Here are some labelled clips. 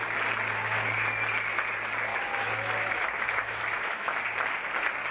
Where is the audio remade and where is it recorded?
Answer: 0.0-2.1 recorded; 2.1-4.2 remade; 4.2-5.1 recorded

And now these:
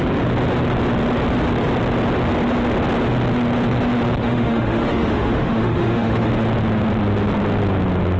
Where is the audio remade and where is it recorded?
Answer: 0.0-4.2 recorded; 4.2-6.3 remade; 6.3-8.2 recorded

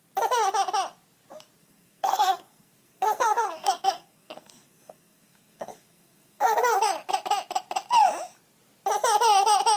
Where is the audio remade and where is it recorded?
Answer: 0.0-1.6 recorded; 1.6-6.8 remade; 6.8-9.8 recorded

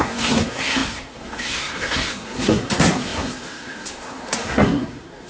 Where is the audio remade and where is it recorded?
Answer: 0.0-5.3 remade

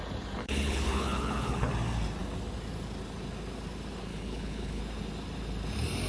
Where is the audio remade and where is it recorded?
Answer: 0.0-0.4 recorded; 0.4-1.7 remade; 1.7-4.1 recorded; 4.1-4.8 remade; 4.8-6.1 recorded

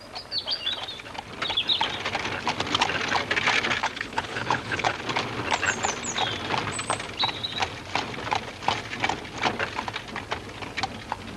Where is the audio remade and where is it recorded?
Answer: 0.0-3.8 recorded; 3.8-5.0 remade; 5.0-11.4 recorded